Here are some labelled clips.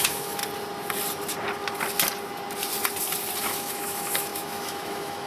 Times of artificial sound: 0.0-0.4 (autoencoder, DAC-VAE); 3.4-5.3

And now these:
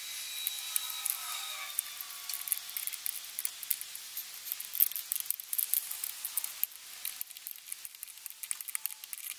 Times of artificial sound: none

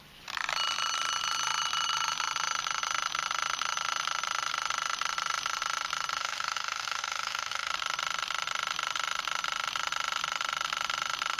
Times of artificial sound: 6.2-7.7 (autoencoder, DAC-VAE)